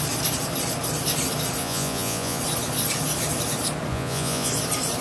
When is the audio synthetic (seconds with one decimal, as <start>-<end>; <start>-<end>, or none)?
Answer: 1.6-2.4; 3.9-4.5